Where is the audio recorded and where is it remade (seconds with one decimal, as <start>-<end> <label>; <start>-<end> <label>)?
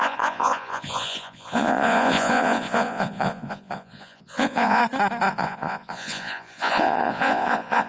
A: 0.0-4.8 remade; 4.8-5.3 recorded; 5.3-7.9 remade